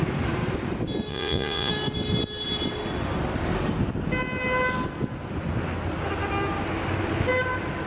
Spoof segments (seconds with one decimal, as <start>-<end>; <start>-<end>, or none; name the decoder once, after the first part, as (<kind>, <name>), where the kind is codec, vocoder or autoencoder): 1.1-1.7 (vocoder, Vocos)